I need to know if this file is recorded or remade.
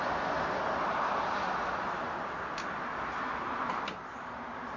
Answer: recorded